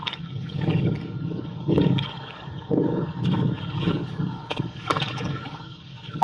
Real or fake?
fake